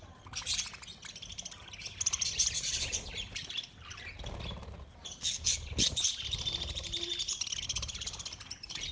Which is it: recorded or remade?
recorded